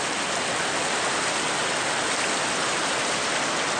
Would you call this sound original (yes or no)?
yes